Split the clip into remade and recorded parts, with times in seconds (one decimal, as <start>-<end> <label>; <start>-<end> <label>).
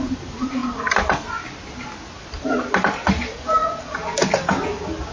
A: 0.0-0.6 remade; 0.6-2.4 recorded; 2.4-3.6 remade; 3.6-5.1 recorded